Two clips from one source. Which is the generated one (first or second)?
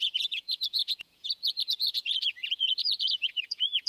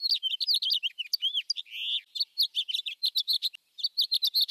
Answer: first